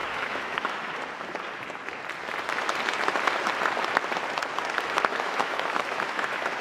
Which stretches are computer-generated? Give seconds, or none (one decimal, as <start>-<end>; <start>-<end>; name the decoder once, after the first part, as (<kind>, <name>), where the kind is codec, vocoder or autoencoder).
0.0-0.9 (autoencoder, DAC-VAE); 5.1-6.6